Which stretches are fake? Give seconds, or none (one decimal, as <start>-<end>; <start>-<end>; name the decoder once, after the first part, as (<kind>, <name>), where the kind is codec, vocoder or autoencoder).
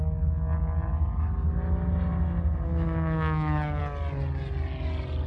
2.7-3.8 (autoencoder, DAC-VAE)